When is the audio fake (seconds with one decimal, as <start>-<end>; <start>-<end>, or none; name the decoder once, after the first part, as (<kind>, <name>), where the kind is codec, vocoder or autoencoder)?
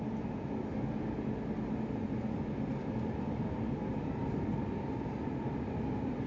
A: none